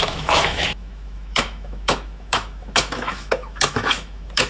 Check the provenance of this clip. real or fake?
fake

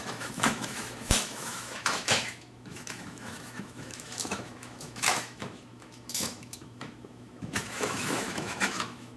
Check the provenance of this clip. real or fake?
fake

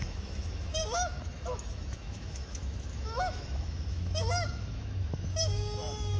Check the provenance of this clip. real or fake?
fake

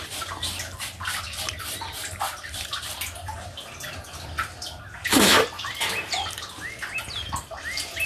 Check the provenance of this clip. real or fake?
real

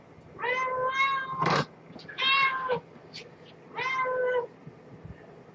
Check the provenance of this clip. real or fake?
real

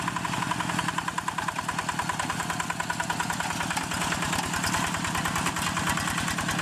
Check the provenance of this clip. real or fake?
real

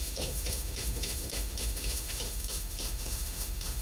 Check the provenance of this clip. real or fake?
fake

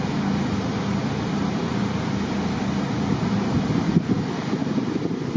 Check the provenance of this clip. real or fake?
real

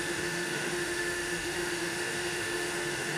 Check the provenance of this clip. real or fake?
fake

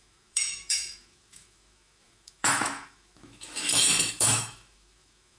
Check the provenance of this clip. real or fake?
fake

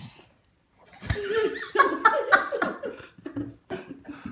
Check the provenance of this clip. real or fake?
real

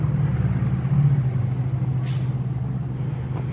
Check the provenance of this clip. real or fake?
real